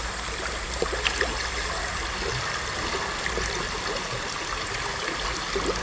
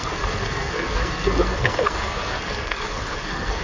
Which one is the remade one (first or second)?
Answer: second